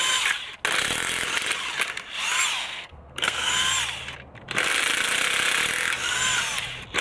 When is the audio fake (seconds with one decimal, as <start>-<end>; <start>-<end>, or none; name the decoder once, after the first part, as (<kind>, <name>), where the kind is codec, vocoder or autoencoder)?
2.6-3.5 (codec, SNAC)